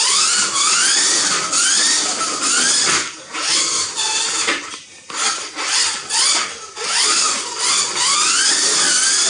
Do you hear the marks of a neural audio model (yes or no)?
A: no